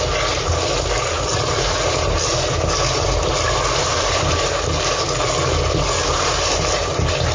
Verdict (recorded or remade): recorded